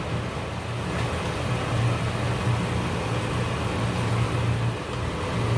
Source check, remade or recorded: recorded